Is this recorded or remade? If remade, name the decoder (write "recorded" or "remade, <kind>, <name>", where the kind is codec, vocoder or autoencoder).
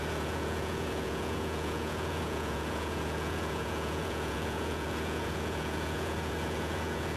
remade, vocoder, Vocos